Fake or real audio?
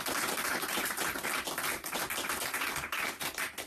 real